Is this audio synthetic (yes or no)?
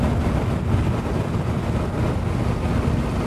no